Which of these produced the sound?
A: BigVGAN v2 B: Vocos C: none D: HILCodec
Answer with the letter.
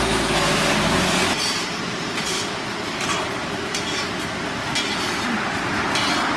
C